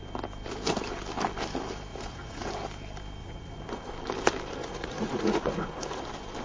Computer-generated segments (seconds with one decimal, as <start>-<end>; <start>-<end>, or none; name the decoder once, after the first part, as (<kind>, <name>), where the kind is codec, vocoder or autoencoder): 1.9-2.5 (vocoder, Vocos); 3.2-3.9; 4.6-6.0